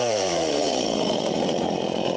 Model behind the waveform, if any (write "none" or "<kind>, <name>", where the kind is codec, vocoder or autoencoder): vocoder, Vocos